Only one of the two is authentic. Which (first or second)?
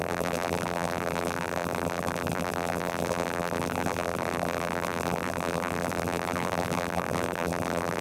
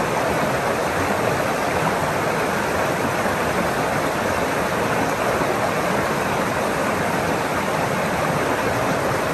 second